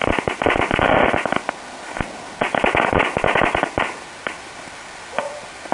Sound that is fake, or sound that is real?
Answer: real